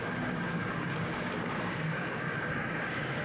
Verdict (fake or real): fake